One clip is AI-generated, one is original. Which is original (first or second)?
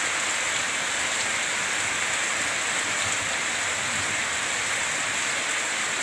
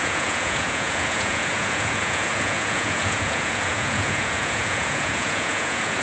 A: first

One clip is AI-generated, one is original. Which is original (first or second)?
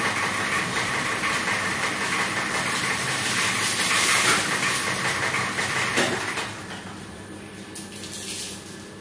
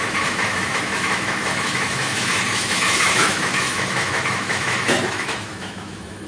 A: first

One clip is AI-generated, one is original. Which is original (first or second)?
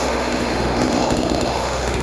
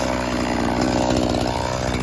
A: second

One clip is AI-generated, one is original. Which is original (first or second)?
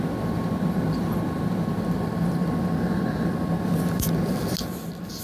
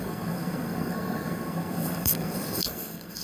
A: first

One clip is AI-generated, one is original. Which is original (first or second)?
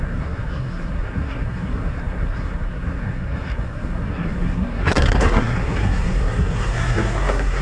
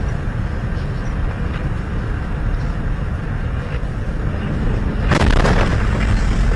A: second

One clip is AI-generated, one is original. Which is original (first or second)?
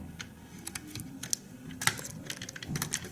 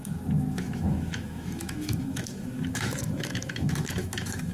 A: first